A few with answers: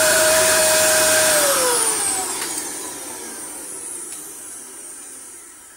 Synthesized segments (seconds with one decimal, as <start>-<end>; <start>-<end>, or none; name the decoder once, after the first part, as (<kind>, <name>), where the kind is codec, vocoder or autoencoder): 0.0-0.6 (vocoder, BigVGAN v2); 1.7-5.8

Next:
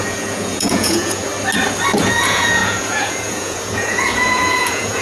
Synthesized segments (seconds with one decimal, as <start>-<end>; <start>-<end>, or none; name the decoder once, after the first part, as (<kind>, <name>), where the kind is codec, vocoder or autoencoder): 0.0-1.2 (vocoder, Vocos); 2.1-5.0

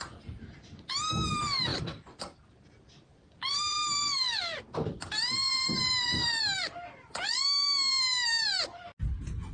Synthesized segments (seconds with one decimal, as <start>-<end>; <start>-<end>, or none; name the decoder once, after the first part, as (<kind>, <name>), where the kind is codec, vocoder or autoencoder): 1.7-3.8 (vocoder, BigVGAN v2)

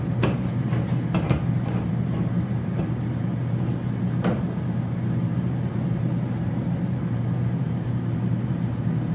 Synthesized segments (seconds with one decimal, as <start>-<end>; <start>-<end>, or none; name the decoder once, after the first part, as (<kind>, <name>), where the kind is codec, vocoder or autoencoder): 0.0-3.3 (vocoder, BigVGAN v2); 4.0-9.1

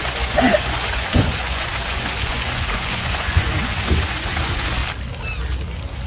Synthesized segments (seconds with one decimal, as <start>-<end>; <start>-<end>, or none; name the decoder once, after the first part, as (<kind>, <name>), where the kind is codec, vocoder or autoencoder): 0.0-4.8 (vocoder, Vocos)

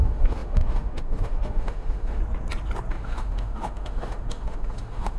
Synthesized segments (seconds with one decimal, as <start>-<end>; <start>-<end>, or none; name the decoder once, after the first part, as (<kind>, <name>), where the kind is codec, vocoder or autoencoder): 0.0-2.2 (autoencoder, DAC-VAE); 2.9-5.2

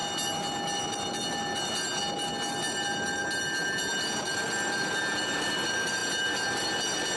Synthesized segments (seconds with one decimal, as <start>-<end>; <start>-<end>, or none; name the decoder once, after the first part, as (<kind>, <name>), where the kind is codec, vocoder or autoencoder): none